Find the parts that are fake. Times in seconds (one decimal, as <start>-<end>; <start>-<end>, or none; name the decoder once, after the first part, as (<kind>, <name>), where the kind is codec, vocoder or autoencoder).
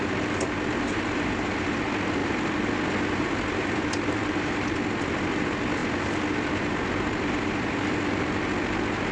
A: none